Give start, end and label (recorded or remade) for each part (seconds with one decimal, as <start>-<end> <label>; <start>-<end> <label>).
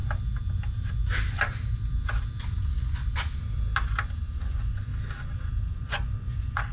0.0-2.6 recorded; 2.6-3.0 remade; 3.0-4.2 recorded; 4.2-4.9 remade; 4.9-5.6 recorded; 5.6-6.7 remade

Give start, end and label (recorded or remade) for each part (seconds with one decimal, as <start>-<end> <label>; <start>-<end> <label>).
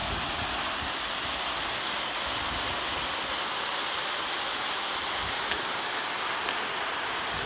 0.0-7.5 recorded